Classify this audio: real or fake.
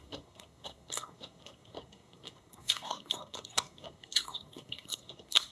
fake